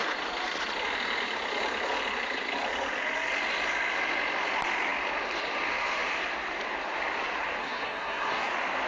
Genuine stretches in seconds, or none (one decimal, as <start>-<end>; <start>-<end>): 0.0-7.6; 8.5-8.9